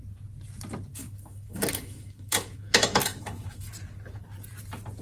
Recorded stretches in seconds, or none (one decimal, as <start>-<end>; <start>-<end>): 0.0-1.0; 3.7-5.0